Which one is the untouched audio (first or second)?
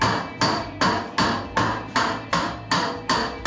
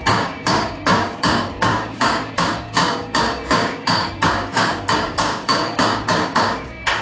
first